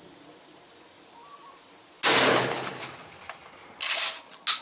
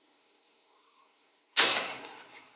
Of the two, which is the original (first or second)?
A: first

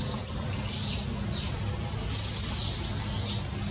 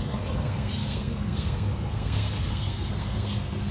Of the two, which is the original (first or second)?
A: first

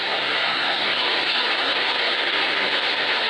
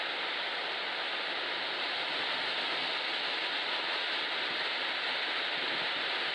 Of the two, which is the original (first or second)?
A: second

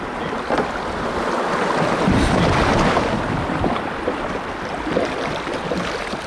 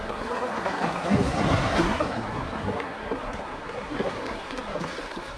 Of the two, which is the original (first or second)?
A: first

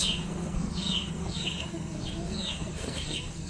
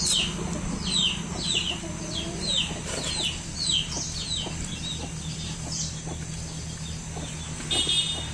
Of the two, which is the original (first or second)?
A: second